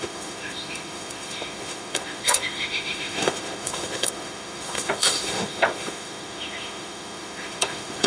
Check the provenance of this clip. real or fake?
fake